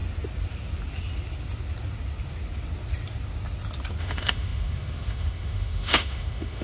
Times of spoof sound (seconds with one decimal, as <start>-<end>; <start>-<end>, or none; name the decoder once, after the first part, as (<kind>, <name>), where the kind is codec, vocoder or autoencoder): 4.0-6.6 (autoencoder, DAC-VAE)